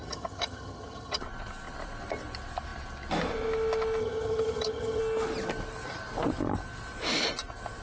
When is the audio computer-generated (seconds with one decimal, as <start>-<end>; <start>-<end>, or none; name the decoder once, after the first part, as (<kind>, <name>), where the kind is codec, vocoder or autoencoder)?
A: 0.0-1.2 (vocoder, HiFi-GAN); 4.0-5.0